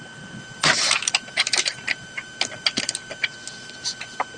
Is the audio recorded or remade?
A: recorded